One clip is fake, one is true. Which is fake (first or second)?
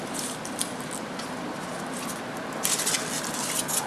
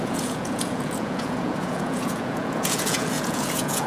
second